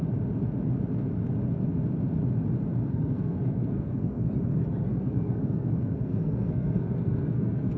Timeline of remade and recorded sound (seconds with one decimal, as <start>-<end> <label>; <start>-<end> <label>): 0.0-2.9 recorded; 2.9-4.3 remade; 4.3-4.9 recorded; 4.9-7.8 remade